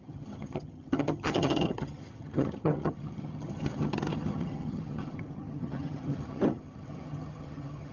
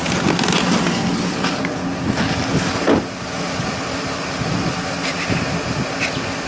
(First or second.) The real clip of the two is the second